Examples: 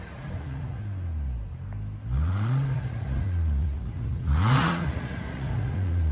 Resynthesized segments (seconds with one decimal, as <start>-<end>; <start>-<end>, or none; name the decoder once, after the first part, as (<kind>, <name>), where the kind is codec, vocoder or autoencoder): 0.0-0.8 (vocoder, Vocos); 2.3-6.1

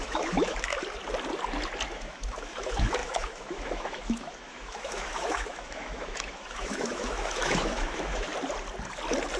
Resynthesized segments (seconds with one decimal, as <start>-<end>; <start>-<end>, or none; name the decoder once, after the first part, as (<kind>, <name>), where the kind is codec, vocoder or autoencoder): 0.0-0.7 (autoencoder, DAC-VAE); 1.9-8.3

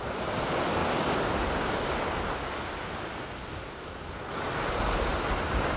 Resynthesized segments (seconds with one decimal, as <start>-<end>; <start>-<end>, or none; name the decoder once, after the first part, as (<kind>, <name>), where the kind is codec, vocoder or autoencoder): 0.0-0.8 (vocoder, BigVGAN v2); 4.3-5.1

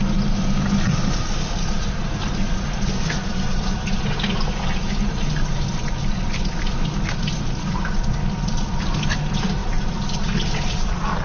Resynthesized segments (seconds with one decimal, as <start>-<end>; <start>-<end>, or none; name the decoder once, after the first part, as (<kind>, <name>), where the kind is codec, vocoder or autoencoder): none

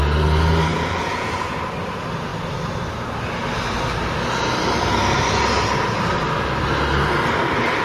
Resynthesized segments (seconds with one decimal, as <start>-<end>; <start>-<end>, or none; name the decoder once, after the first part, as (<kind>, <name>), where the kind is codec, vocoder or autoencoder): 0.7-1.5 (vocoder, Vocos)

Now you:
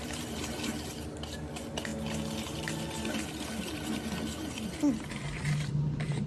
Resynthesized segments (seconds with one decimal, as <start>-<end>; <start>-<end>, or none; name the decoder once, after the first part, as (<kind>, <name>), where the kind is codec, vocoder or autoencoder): none

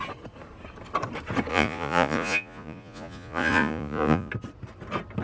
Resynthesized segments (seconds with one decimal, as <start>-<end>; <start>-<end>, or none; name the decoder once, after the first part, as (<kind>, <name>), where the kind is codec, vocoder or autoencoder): 1.5-4.3 (vocoder, Vocos)